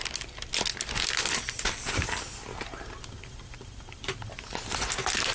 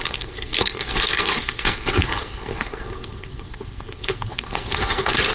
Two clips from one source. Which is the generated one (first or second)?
second